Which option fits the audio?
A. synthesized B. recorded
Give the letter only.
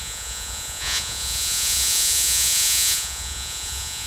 A